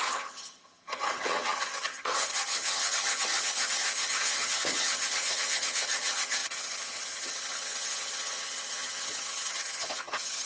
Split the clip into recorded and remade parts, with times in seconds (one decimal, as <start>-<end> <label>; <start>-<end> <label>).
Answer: 0.0-10.5 remade